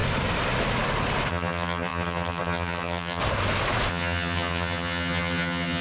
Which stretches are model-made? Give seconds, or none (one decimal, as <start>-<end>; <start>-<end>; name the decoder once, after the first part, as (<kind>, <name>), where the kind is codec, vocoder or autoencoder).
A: 1.3-3.2 (vocoder, HiFi-GAN); 3.9-5.8